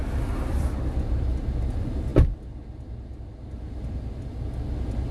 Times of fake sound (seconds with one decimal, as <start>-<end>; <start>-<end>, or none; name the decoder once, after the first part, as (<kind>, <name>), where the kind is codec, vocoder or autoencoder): none